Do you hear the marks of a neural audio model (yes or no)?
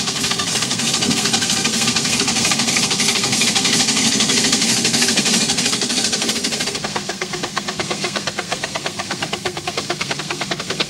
yes